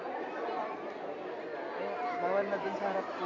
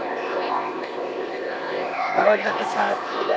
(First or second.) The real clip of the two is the first